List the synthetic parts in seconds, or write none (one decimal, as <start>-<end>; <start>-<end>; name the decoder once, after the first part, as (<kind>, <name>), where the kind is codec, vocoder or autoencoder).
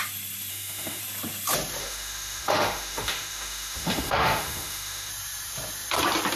0.5-1.0 (autoencoder, DAC-VAE); 1.8-5.1